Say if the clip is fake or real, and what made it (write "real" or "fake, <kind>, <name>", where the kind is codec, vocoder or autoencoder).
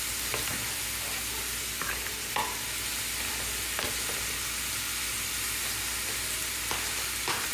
real